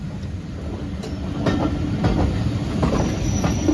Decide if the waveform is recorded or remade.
recorded